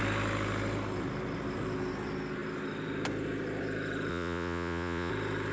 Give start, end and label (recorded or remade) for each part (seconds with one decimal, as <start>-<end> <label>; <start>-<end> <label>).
0.0-4.1 recorded; 4.1-5.1 remade; 5.1-5.5 recorded